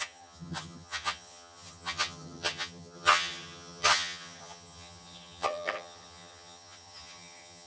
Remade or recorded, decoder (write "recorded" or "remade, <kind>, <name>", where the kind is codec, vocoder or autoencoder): remade, vocoder, HiFi-GAN